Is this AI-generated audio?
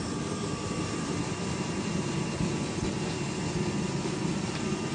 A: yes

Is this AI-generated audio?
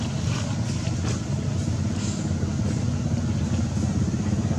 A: no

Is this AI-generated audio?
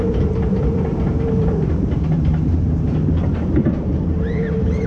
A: yes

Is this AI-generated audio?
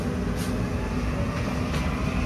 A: no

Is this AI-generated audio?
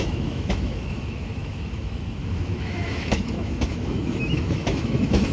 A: yes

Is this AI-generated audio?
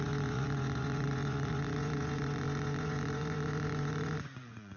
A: yes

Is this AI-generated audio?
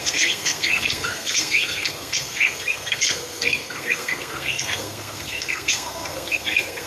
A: yes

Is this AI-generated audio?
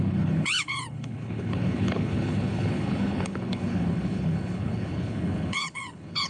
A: yes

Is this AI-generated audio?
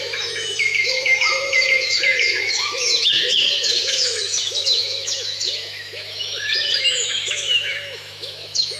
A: yes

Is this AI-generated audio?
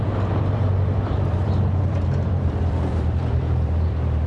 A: yes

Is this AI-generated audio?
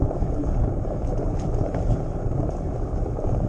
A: yes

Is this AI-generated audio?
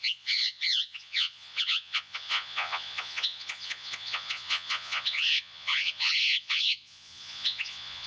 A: yes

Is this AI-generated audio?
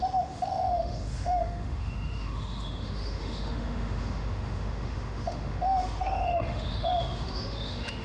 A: yes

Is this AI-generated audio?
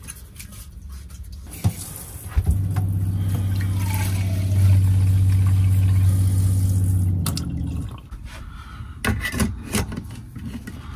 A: no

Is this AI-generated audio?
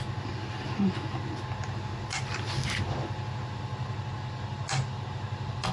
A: no